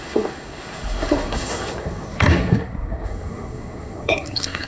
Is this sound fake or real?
fake